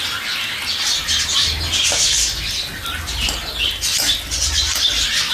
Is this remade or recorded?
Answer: recorded